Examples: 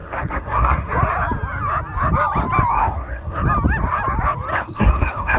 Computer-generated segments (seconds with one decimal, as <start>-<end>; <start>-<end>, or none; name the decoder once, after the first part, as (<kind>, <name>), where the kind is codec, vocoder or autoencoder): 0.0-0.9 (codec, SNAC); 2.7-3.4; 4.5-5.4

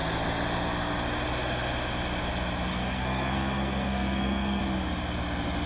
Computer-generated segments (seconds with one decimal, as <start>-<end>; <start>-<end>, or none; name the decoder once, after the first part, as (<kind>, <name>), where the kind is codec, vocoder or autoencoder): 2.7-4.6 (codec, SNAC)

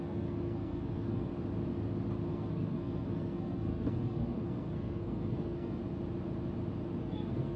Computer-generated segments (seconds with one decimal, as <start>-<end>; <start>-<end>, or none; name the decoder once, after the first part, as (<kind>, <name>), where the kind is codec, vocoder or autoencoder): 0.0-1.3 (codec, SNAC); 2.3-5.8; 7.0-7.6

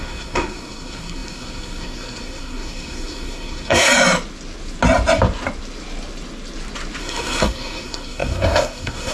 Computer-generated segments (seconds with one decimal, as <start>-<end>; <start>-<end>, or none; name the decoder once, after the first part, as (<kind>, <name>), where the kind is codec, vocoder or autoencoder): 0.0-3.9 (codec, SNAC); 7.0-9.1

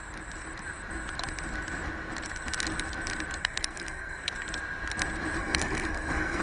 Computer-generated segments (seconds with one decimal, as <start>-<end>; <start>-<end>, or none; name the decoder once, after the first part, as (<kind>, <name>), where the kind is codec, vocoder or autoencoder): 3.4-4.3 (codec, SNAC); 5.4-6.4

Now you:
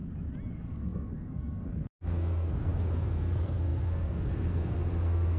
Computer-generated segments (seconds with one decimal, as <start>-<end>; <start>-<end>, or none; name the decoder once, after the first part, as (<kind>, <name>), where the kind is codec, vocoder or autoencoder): 0.5-5.4 (codec, SNAC)